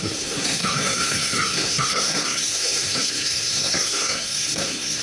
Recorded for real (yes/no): no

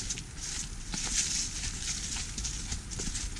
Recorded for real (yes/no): yes